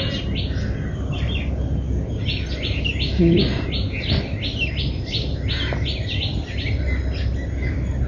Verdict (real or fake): real